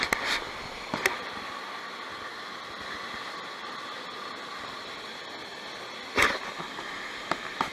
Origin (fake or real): real